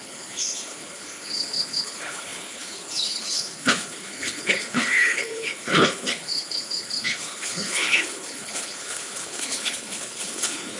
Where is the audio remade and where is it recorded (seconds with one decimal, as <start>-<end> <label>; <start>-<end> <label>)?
0.0-10.8 remade

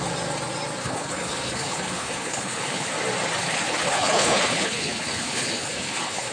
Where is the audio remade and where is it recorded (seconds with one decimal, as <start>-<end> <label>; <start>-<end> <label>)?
0.0-0.8 recorded; 0.8-2.9 remade; 2.9-3.4 recorded; 3.4-6.3 remade

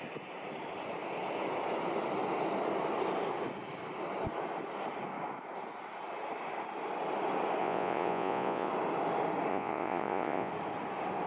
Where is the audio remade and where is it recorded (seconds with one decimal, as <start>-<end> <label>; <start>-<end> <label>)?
0.0-7.6 recorded; 7.6-8.7 remade; 8.7-9.5 recorded; 9.5-10.5 remade; 10.5-11.3 recorded

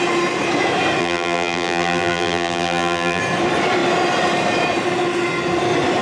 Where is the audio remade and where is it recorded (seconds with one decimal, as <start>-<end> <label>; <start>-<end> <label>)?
0.0-1.0 recorded; 1.0-3.2 remade; 3.2-6.0 recorded

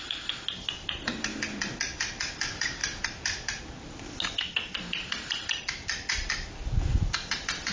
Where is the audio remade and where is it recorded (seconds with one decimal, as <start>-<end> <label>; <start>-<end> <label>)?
0.0-2.8 recorded; 2.8-3.6 remade; 3.6-7.7 recorded

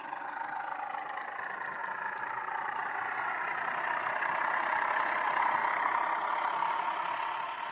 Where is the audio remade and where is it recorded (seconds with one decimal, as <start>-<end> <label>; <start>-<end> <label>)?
0.0-7.7 recorded